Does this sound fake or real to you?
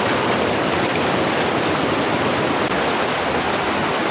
real